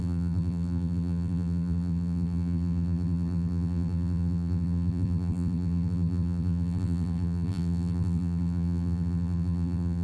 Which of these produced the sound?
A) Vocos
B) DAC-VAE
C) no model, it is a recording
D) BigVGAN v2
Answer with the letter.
D